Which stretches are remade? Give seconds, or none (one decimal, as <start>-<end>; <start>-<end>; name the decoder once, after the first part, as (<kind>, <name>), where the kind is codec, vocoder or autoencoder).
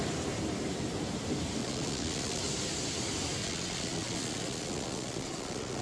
1.6-2.4 (vocoder, Vocos); 3.4-5.8